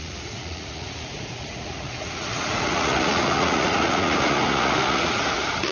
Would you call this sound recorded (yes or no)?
no